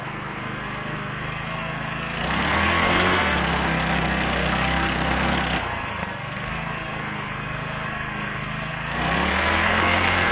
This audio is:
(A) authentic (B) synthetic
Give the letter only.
B